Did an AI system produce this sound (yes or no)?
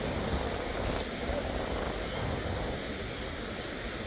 no